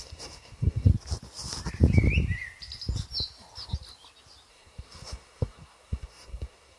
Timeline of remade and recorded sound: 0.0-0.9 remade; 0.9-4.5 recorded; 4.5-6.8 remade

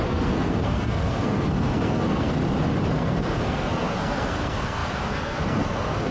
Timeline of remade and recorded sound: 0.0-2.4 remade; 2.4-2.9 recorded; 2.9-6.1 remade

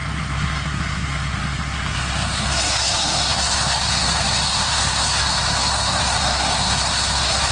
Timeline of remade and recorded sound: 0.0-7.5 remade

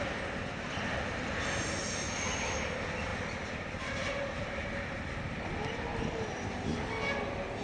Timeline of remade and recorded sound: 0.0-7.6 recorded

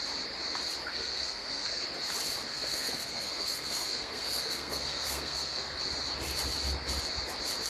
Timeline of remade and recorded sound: 0.0-0.9 recorded; 0.9-1.8 remade; 1.8-2.5 recorded; 2.5-5.8 remade; 5.8-7.7 recorded

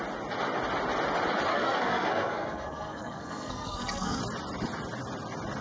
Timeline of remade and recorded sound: 0.0-1.5 recorded; 1.5-4.2 remade; 4.2-5.6 recorded

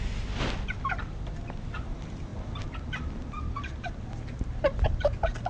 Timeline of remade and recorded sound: 0.0-5.5 recorded